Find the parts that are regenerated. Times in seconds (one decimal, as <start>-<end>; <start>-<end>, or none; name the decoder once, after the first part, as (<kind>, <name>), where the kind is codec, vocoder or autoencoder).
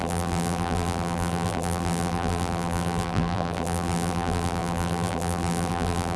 0.0-6.2 (vocoder, BigVGAN v2)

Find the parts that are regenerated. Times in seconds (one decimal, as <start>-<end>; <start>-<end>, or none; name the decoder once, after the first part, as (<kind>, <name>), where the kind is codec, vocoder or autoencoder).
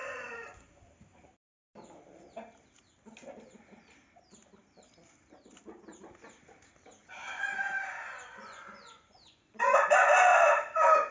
0.0-0.7 (vocoder, Vocos); 7.0-9.6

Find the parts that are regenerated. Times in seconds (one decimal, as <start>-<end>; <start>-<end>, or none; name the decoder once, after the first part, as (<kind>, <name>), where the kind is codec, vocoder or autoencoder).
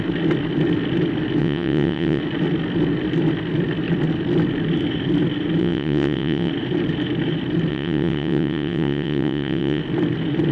1.4-2.2 (vocoder, WaveNeXt); 5.6-6.5; 7.7-9.8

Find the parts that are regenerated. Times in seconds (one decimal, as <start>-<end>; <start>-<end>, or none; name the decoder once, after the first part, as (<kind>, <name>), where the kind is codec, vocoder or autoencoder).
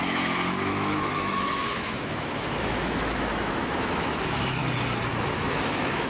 0.0-4.6 (autoencoder, DAC-VAE); 5.1-6.1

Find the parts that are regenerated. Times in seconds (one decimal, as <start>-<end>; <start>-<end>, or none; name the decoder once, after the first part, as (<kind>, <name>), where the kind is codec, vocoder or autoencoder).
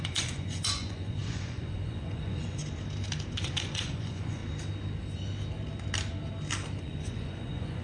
0.0-2.6 (vocoder, Vocos); 3.4-4.4; 6.8-7.8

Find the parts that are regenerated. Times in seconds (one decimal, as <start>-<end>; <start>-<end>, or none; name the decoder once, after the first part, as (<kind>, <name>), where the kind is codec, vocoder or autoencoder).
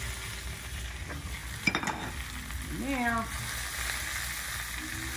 none